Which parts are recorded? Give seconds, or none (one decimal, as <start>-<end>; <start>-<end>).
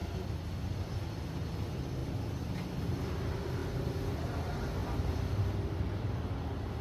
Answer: 0.0-4.8; 5.4-6.8